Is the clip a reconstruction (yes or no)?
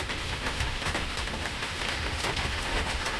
yes